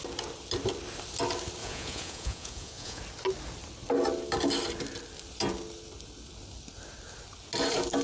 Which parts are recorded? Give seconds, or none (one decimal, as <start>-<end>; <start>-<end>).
0.0-1.6; 3.0-8.0